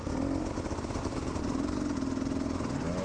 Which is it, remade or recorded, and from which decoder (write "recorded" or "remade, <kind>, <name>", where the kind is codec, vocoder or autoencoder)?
recorded